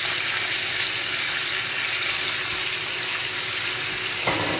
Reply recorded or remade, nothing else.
recorded